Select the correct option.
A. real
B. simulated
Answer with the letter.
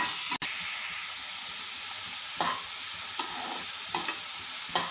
A